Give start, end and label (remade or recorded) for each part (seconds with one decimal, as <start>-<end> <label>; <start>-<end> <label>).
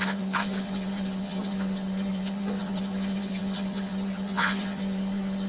0.0-5.5 remade